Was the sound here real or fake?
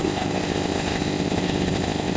fake